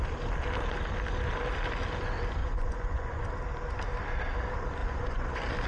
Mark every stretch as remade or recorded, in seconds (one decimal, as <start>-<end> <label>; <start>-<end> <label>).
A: 0.0-2.4 recorded; 2.4-3.2 remade; 3.2-4.8 recorded; 4.8-5.3 remade; 5.3-5.7 recorded